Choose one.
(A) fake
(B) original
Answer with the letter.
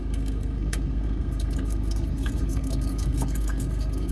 A